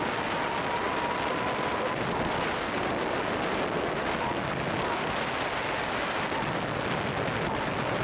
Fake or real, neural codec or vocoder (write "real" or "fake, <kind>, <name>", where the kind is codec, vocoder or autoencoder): real